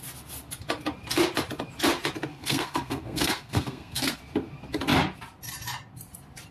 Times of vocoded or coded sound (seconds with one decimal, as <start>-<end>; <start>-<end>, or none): 2.3-4.2